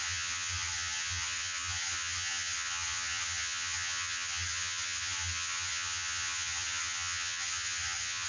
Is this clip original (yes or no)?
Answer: no